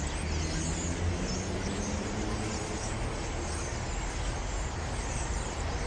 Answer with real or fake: real